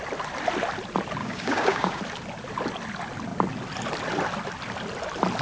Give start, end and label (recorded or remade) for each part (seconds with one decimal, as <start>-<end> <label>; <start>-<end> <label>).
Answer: 0.0-1.2 recorded; 1.2-2.0 remade; 2.0-5.4 recorded